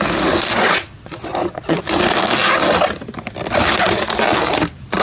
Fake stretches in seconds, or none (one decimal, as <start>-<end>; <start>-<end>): 0.5-1.8